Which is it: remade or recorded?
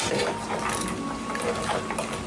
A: recorded